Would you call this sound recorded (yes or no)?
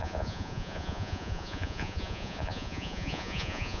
no